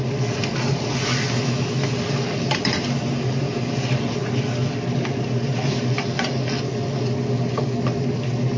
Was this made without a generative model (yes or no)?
yes